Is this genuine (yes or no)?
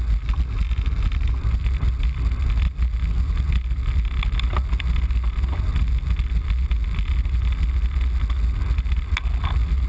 yes